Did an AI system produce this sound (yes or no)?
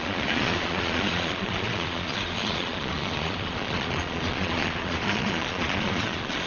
yes